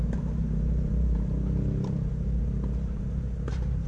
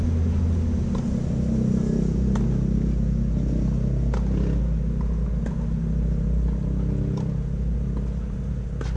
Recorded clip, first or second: second